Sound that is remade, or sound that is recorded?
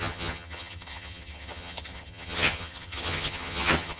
remade